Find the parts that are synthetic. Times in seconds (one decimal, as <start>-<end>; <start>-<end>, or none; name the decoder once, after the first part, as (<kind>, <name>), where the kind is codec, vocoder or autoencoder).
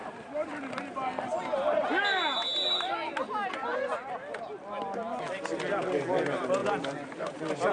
0.0-0.8 (vocoder, BigVGAN v2); 6.6-7.7